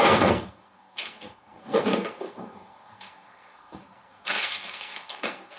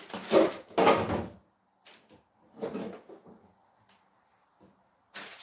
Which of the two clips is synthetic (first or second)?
first